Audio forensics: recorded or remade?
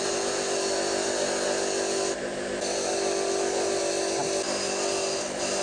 recorded